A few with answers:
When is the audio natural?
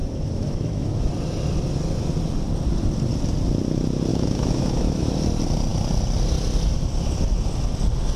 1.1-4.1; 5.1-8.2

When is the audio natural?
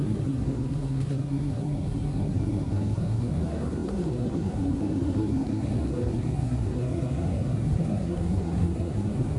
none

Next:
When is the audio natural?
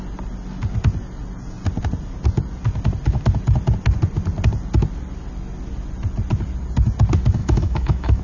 0.0-7.4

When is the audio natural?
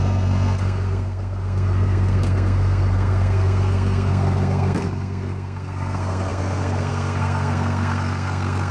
none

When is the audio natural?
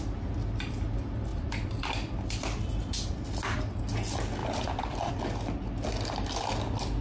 0.0-1.3; 2.7-4.4; 5.1-7.0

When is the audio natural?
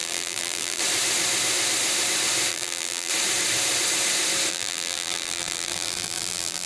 0.8-2.5; 3.1-4.5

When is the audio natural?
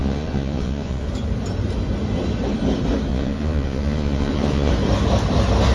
1.1-3.1; 4.7-5.7